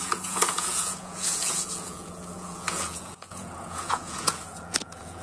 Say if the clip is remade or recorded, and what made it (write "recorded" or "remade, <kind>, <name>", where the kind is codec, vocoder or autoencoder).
remade, vocoder, Vocos